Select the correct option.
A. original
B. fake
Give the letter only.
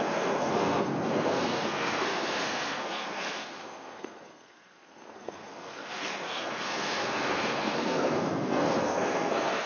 B